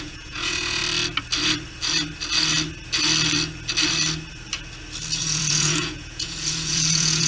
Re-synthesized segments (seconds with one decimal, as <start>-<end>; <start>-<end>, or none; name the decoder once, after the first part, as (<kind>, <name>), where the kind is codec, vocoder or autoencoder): 0.0-0.8 (vocoder, Vocos); 5.2-7.3